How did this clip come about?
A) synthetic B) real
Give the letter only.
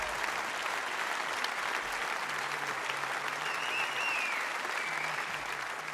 B